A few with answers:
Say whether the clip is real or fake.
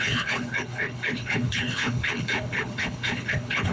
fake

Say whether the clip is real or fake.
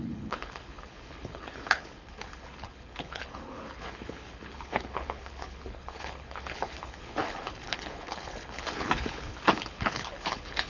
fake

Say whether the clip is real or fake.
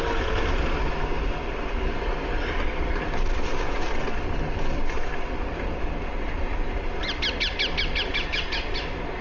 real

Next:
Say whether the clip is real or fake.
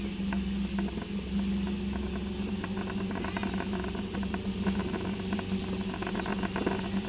real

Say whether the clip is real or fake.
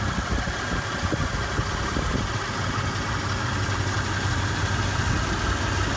real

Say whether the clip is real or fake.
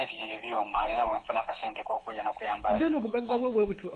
fake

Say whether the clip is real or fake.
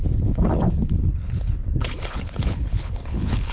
fake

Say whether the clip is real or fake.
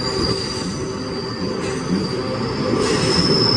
real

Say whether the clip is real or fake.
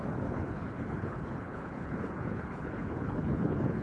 fake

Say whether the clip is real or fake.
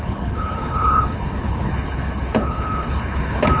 fake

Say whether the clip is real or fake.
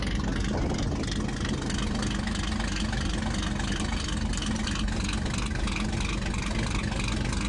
real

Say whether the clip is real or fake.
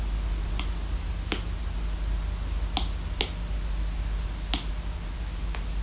real